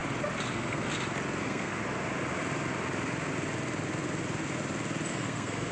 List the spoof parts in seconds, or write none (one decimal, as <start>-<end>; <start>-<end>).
0.5-0.9; 1.4-1.8; 5.1-5.7